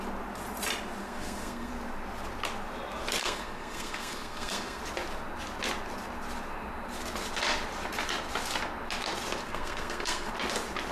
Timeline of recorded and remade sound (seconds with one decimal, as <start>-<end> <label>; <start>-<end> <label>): 0.0-1.0 recorded; 1.0-1.7 remade; 1.7-3.2 recorded; 3.2-4.8 remade; 4.8-9.4 recorded; 9.4-10.3 remade; 10.3-10.9 recorded